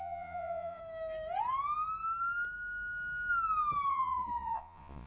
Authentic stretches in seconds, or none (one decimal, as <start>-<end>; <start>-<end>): 0.8-3.9